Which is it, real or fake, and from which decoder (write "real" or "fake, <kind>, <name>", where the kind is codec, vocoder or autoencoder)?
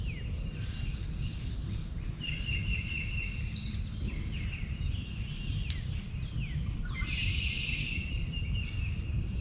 real